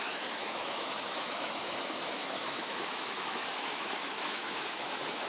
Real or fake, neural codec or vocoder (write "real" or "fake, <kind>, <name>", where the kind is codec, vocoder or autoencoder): fake, autoencoder, DAC-VAE